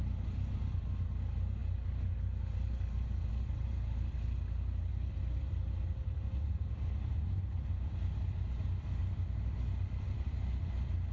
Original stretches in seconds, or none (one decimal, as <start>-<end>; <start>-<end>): 0.0-4.9; 7.7-9.0; 10.3-11.1